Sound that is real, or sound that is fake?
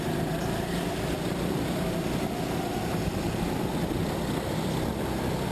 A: real